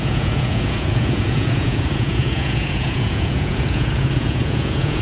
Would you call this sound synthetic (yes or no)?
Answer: yes